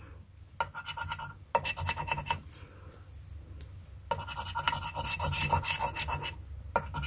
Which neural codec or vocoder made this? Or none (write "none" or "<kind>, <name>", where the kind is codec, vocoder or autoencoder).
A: none